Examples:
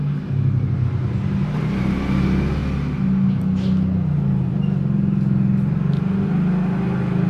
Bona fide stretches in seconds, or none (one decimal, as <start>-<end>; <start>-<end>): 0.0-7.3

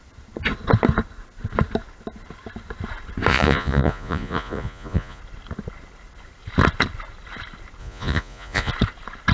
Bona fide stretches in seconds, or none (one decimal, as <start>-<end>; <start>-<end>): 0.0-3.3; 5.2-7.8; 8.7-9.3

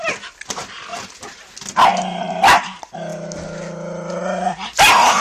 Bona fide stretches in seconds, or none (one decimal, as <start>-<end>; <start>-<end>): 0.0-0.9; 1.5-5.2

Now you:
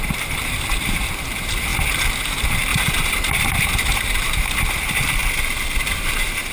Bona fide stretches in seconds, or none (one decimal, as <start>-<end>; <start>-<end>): 1.7-2.2; 2.7-3.3; 5.2-5.8